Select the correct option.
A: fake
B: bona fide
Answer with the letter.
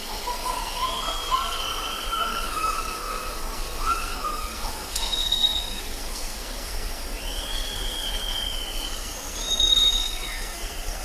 A